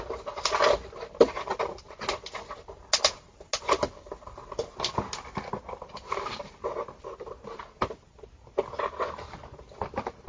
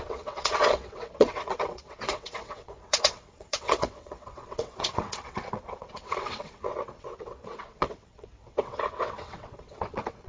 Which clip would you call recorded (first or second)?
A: first